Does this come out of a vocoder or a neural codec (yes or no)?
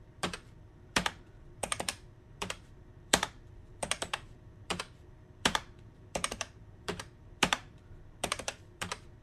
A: yes